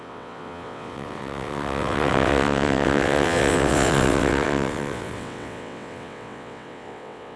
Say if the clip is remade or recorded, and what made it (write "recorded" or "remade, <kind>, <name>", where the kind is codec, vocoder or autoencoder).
remade, vocoder, WaveNeXt